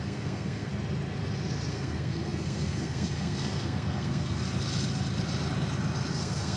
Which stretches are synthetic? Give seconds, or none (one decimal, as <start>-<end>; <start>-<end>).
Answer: 0.0-0.7; 1.7-4.4; 6.1-6.6